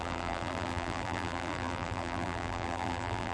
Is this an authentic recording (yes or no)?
no